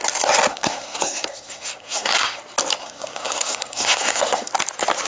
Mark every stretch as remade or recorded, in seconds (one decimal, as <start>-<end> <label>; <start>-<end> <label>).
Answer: 0.0-0.5 recorded; 0.5-2.4 remade; 2.4-2.8 recorded; 2.8-4.5 remade; 4.5-5.1 recorded

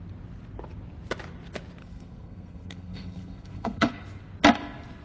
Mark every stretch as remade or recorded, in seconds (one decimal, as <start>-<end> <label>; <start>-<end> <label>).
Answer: 0.0-1.8 recorded; 1.8-3.9 remade; 3.9-5.0 recorded

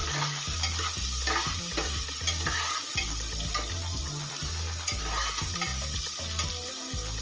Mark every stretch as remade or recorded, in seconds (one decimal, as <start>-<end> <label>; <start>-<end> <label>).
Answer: 0.0-7.2 recorded